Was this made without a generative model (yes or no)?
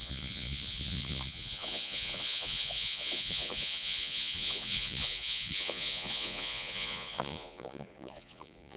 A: no